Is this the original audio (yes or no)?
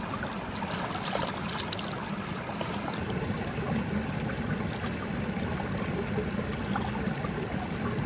yes